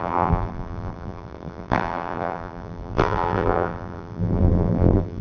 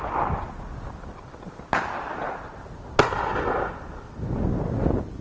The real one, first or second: second